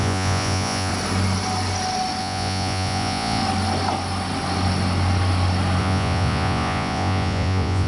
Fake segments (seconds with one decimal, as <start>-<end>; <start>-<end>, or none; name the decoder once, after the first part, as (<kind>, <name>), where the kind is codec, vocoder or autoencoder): 0.0-0.9 (vocoder, Vocos); 2.2-3.4; 5.8-7.9